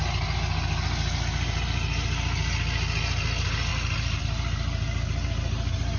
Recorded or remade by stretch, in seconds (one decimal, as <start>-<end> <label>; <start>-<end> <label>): 0.0-6.0 recorded